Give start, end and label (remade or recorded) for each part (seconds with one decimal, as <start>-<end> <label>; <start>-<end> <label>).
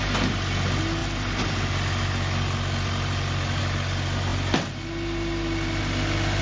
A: 0.0-6.4 recorded